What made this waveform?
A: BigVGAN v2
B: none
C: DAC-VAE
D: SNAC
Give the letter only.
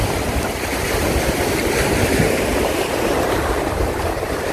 A